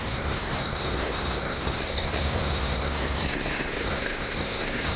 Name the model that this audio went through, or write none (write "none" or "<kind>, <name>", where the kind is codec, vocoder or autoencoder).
codec, SNAC